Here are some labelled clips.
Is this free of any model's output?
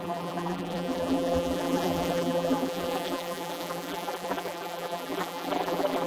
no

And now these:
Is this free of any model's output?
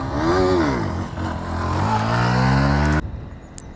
yes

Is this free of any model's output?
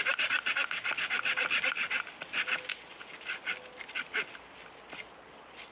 yes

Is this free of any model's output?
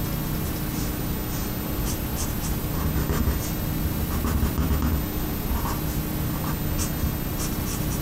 yes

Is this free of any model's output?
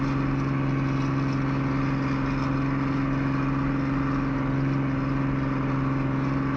yes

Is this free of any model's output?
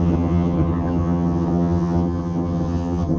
no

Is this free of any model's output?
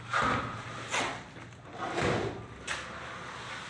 yes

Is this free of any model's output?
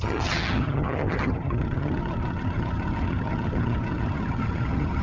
no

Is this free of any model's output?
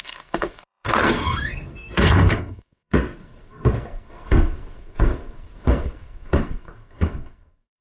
no